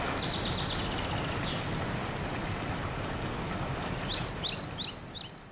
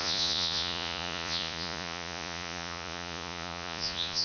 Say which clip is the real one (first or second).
first